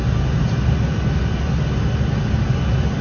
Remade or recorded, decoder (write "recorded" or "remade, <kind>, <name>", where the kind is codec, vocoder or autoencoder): recorded